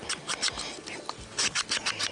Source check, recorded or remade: recorded